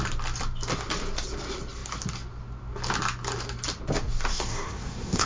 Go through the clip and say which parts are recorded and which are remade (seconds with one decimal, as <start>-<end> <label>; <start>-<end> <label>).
0.0-4.3 recorded; 4.3-5.3 remade